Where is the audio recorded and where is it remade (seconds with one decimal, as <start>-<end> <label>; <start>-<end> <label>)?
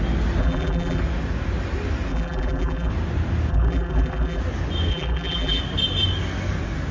0.0-0.4 recorded; 0.4-1.0 remade; 1.0-2.1 recorded; 2.1-2.9 remade; 2.9-3.5 recorded; 3.5-4.4 remade; 4.4-4.9 recorded; 4.9-5.6 remade; 5.6-6.9 recorded